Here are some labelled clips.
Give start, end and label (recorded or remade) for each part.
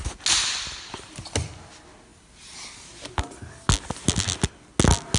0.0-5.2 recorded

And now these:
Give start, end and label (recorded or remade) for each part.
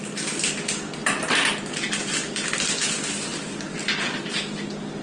0.0-5.0 recorded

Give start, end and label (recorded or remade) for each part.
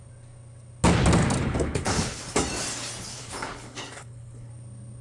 0.0-1.4 recorded; 1.4-2.2 remade; 2.2-3.2 recorded; 3.2-4.5 remade; 4.5-5.0 recorded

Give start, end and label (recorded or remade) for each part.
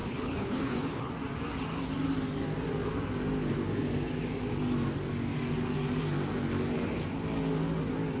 0.0-1.1 remade; 1.1-8.2 recorded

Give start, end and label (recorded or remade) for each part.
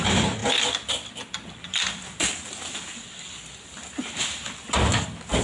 0.0-5.4 recorded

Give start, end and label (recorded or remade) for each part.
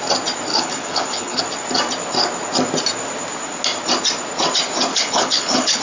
0.0-0.5 recorded; 0.5-1.4 remade; 1.4-4.9 recorded; 4.9-5.8 remade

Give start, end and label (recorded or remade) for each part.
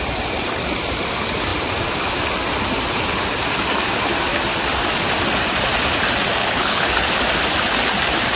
0.0-6.4 recorded; 6.4-6.9 remade; 6.9-8.4 recorded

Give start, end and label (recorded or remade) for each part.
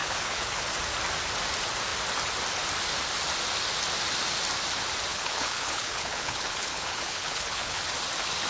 0.0-0.6 remade; 0.6-5.1 recorded; 5.1-7.8 remade; 7.8-8.5 recorded